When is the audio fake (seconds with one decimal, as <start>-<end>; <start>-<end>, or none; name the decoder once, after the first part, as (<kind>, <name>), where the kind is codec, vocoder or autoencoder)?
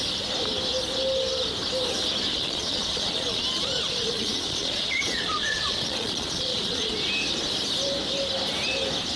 2.3-6.9 (vocoder, Vocos)